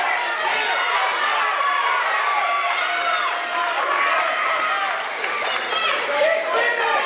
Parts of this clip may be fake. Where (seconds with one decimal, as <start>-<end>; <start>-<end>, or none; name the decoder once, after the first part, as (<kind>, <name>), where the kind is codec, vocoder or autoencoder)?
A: 5.9-6.5 (vocoder, BigVGAN v2)